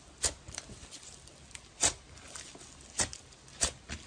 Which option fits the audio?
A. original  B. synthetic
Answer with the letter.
A